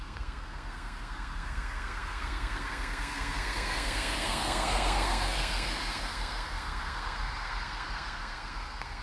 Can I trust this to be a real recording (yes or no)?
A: no